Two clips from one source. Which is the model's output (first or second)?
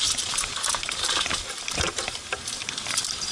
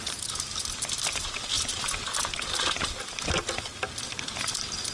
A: first